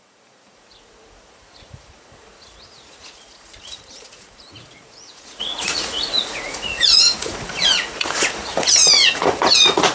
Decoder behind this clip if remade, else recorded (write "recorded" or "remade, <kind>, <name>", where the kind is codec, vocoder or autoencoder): remade, vocoder, Vocos